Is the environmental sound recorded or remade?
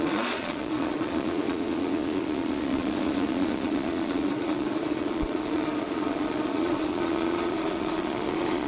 remade